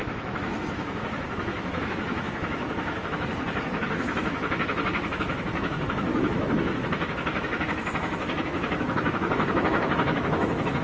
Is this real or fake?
fake